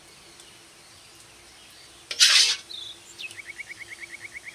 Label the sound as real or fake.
fake